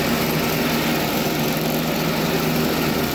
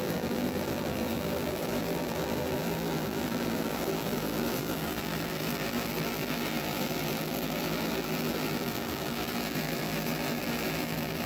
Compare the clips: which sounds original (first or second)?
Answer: first